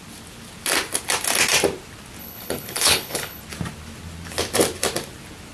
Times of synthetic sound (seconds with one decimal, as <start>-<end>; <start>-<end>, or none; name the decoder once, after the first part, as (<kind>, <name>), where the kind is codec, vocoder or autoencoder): 2.2-3.4 (codec, HILCodec)